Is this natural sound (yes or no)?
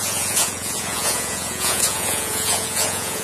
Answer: no